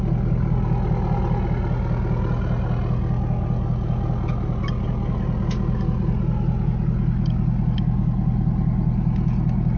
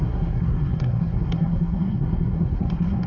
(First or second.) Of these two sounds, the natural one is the first